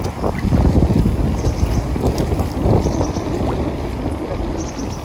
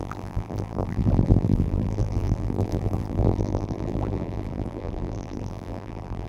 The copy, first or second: second